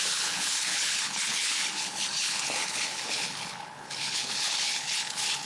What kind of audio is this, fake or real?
fake